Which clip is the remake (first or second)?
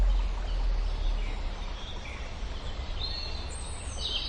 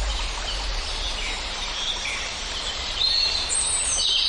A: second